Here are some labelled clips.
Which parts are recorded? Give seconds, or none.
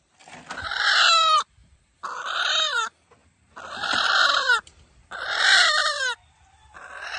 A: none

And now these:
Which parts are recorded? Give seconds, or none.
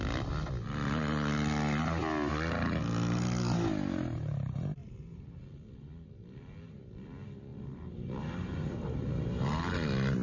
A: 0.0-4.8; 5.4-7.5; 9.3-10.2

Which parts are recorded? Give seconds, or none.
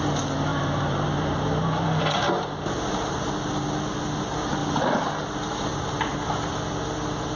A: 0.0-0.5; 3.3-4.6; 6.3-7.4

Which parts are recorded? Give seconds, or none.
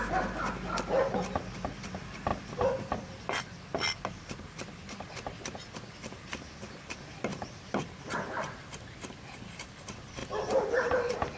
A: 0.0-7.3; 9.6-10.2; 10.9-11.4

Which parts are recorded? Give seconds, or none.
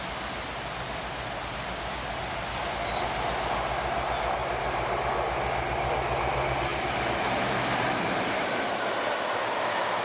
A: 0.0-4.4; 5.0-6.7; 8.8-10.0